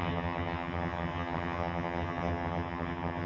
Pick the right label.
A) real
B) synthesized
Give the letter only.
B